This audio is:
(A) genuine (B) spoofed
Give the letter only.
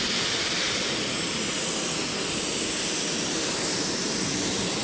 A